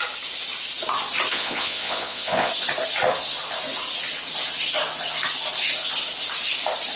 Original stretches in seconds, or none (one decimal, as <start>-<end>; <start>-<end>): 0.0-1.3; 2.5-7.0